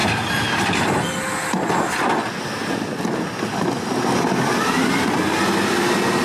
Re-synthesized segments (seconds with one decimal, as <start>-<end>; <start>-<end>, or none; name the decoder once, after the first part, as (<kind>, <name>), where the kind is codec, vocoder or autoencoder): 0.0-0.6 (vocoder, BigVGAN v2)